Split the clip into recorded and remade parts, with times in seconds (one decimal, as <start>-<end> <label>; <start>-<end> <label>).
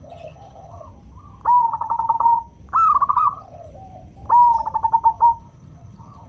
0.0-0.9 remade; 0.9-1.6 recorded; 1.6-2.4 remade; 2.4-3.1 recorded; 3.1-3.7 remade; 3.7-5.4 recorded; 5.4-6.3 remade